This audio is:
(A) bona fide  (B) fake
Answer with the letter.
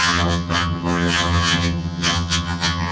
B